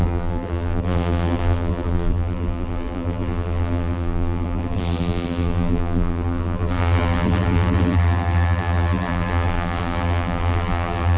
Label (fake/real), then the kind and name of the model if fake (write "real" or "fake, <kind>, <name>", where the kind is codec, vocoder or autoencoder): fake, vocoder, BigVGAN v2